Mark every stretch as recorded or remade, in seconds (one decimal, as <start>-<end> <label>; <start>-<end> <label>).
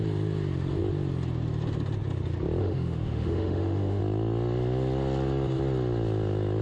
0.0-2.6 recorded; 2.6-4.0 remade; 4.0-6.6 recorded